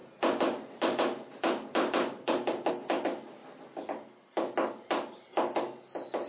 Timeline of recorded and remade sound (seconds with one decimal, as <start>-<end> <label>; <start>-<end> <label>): 0.0-6.3 recorded